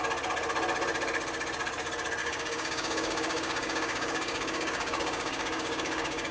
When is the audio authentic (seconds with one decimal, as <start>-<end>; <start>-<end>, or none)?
0.0-2.2